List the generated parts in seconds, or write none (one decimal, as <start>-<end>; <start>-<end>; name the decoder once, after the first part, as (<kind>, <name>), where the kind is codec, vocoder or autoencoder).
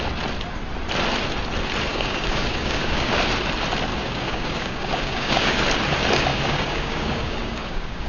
1.9-3.2 (codec, DAC); 3.9-5.6; 6.3-8.1